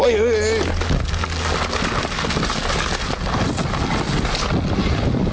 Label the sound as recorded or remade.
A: recorded